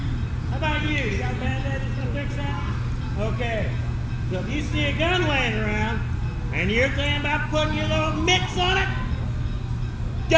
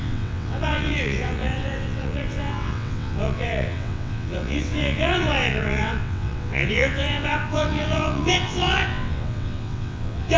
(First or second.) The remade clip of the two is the second